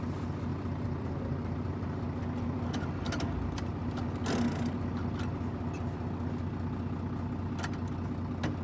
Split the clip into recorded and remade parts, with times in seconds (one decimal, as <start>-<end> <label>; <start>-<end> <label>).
0.0-0.5 recorded; 0.5-1.7 remade; 1.7-8.6 recorded